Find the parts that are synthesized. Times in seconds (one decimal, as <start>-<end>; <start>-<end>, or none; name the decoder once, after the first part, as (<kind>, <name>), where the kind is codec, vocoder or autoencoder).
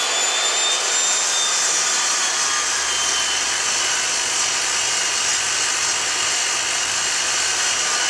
none